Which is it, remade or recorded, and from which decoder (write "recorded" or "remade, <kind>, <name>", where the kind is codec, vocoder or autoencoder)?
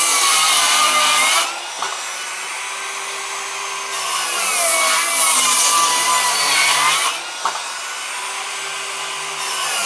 recorded